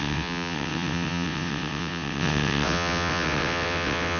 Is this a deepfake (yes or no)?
yes